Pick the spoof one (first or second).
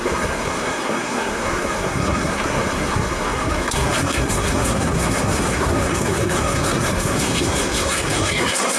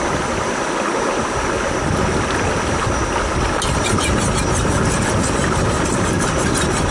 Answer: first